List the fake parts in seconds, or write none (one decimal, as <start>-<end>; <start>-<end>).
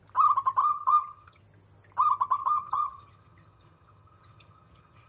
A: 0.6-1.4; 2.4-5.1